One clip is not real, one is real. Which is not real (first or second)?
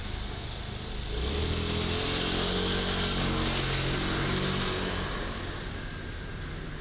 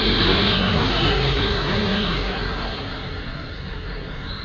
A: second